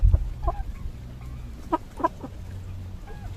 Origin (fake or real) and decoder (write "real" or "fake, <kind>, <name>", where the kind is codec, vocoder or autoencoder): real